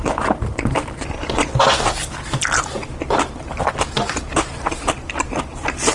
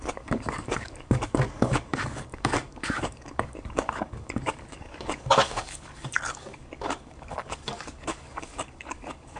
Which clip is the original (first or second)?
first